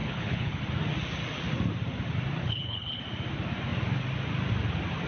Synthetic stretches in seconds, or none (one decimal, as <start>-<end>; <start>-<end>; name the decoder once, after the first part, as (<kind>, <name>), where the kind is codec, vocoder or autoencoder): 0.0-0.6 (codec, HILCodec); 2.4-3.0